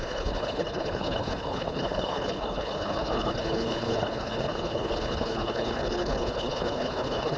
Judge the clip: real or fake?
fake